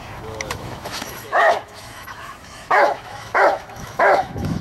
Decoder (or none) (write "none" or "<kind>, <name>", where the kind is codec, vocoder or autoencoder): autoencoder, DAC-VAE